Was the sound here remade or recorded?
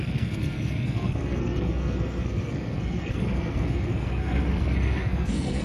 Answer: remade